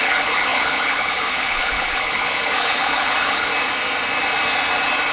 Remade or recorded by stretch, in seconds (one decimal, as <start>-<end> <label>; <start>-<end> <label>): 0.0-3.5 remade; 3.5-5.1 recorded